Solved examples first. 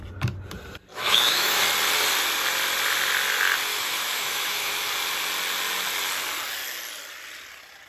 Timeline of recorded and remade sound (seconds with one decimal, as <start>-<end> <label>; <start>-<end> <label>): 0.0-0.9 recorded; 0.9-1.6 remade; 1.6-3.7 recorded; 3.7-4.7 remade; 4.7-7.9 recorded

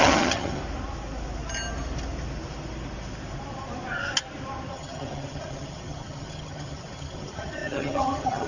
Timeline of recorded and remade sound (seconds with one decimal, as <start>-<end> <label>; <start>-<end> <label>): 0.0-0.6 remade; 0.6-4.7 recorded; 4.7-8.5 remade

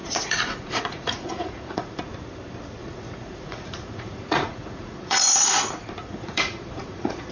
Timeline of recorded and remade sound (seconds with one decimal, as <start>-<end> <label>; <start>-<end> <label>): 0.0-2.0 remade; 2.0-2.8 recorded; 2.8-7.3 remade

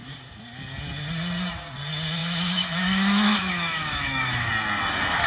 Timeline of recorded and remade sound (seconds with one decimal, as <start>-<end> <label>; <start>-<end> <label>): 0.0-2.2 recorded; 2.2-4.5 remade; 4.5-5.3 recorded

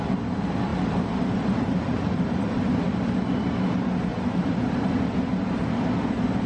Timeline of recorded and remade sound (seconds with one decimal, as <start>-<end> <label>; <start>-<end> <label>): 0.0-0.7 recorded; 0.7-2.7 remade; 2.7-4.1 recorded; 4.1-4.9 remade; 4.9-6.5 recorded

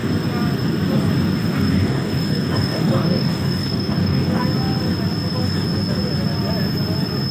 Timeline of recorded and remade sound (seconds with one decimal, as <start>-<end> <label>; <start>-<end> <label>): 0.0-1.4 recorded; 1.4-4.4 remade; 4.4-7.3 recorded

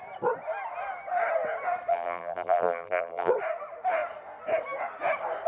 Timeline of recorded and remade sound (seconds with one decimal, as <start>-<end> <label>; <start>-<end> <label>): 0.0-1.9 recorded; 1.9-3.3 remade; 3.3-5.5 recorded